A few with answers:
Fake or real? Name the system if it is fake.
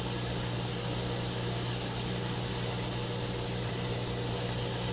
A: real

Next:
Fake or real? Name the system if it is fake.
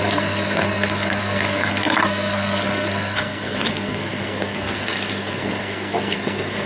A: fake, codec, SNAC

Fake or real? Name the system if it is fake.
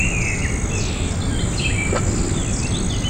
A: real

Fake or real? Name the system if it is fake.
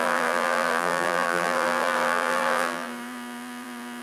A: fake, vocoder, BigVGAN v2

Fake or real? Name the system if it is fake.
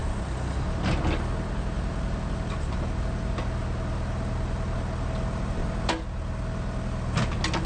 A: real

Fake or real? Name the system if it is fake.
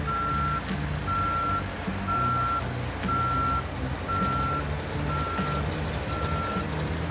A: real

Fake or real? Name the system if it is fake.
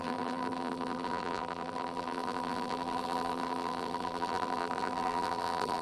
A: fake, vocoder, BigVGAN v2